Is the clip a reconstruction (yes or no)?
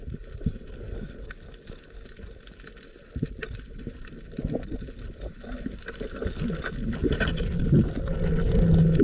no